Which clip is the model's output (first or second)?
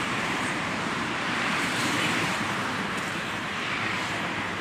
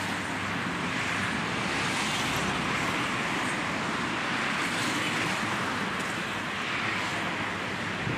first